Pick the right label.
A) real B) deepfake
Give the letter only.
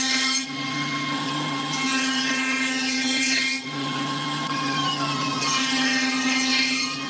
B